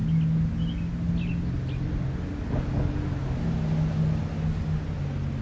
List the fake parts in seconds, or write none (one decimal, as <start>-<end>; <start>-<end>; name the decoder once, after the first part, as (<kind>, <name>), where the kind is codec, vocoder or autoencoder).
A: none